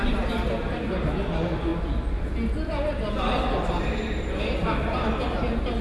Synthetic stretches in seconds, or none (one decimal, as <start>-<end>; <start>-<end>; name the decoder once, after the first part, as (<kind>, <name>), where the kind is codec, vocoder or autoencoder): none